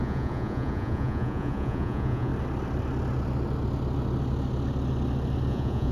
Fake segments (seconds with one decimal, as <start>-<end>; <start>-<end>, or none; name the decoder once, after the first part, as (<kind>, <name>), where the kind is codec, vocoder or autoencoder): 0.0-2.3 (vocoder, Vocos); 5.5-5.9